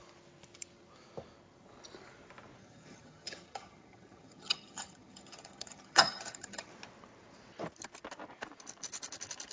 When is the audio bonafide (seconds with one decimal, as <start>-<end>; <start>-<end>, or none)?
0.0-2.6; 6.7-9.5